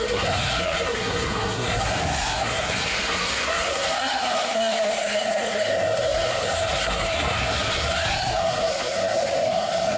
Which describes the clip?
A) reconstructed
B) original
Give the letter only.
A